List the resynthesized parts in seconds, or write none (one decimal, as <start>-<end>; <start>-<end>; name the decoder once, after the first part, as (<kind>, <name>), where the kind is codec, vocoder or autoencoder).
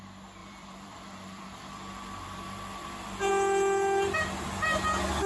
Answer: 0.4-3.3 (vocoder, BigVGAN v2)